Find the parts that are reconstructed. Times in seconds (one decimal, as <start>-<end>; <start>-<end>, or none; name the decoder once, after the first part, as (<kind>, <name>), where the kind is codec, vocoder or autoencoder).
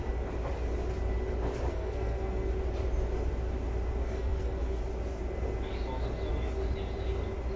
1.7-2.5 (codec, SNAC); 4.0-4.8